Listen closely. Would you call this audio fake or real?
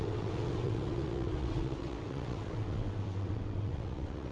fake